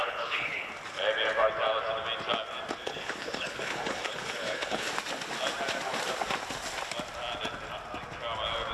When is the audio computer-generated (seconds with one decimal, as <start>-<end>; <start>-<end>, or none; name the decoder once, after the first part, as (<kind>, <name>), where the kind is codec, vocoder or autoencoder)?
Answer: 0.0-0.7 (codec, HILCodec); 2.8-4.9